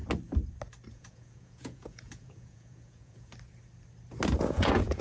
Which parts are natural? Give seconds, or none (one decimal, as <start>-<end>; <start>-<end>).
0.0-0.9; 3.3-4.4